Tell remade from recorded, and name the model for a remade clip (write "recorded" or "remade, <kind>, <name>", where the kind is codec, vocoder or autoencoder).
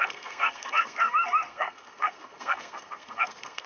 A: remade, codec, SNAC